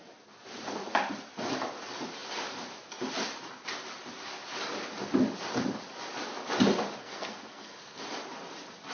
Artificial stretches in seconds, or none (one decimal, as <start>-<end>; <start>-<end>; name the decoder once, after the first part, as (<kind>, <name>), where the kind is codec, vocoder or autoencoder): 7.0-8.0 (codec, SNAC)